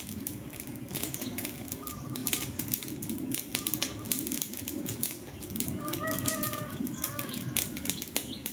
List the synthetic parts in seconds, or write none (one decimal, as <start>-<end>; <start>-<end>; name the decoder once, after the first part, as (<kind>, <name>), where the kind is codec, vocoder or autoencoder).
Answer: 0.0-8.5 (codec, DAC)